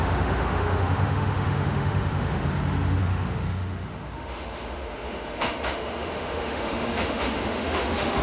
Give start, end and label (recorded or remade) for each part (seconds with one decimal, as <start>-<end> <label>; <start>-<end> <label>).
0.0-2.4 remade; 2.4-3.0 recorded; 3.0-8.2 remade